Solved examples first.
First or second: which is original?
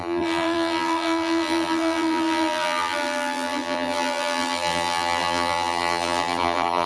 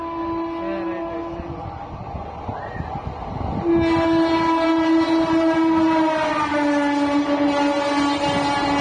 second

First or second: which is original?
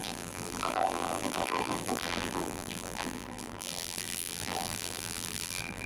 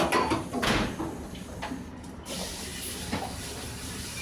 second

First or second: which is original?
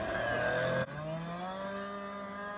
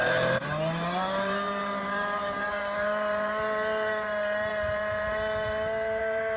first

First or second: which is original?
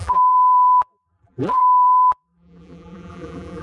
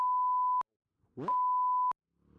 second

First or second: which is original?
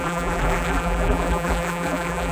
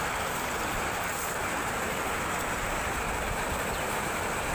second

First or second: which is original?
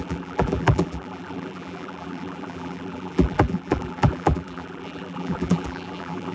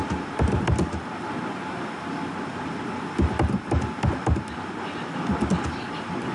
second